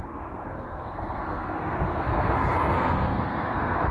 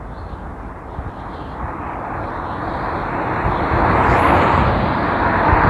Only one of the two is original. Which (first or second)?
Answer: second